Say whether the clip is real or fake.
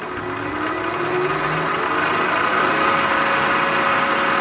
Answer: real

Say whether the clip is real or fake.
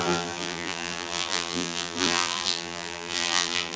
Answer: fake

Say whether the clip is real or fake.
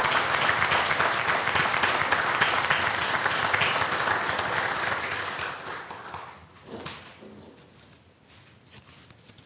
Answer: real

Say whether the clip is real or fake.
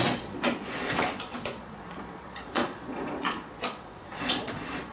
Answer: fake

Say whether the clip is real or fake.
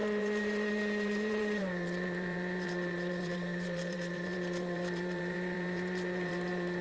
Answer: fake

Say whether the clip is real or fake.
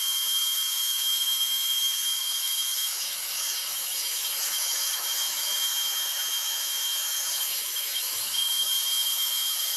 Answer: fake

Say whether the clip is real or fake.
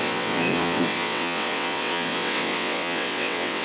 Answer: fake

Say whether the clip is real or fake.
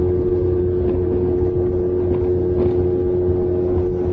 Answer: real